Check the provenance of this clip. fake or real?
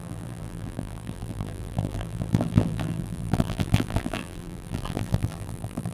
fake